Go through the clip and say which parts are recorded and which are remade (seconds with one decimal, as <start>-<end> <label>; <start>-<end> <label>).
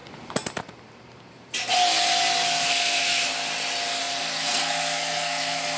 0.0-2.7 recorded; 2.7-3.3 remade; 3.3-4.0 recorded; 4.0-5.8 remade